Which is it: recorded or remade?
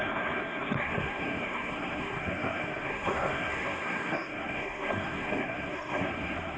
remade